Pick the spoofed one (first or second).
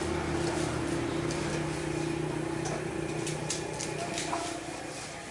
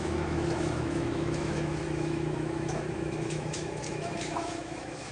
second